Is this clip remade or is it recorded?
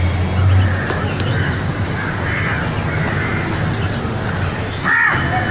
recorded